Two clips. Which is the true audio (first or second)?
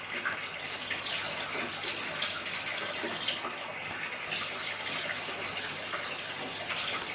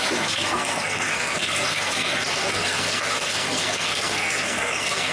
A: first